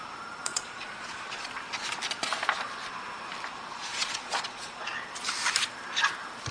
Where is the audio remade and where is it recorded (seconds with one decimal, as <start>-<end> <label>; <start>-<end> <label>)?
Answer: 0.0-0.5 recorded; 0.5-1.5 remade; 1.5-3.9 recorded; 3.9-4.8 remade; 4.8-6.5 recorded